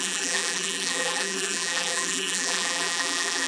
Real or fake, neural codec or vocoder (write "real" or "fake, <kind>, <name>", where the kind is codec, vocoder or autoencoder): fake, vocoder, BigVGAN v2